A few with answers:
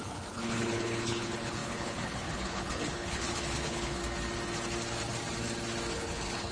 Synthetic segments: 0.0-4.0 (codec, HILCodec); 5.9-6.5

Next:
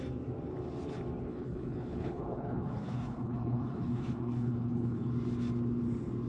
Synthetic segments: 1.3-5.1 (codec, HILCodec)